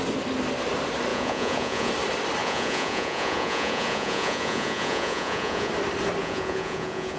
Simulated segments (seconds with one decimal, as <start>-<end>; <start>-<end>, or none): 1.1-1.9; 2.4-5.7; 6.2-7.2